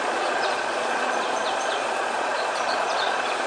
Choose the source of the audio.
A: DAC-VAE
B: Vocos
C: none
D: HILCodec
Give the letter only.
B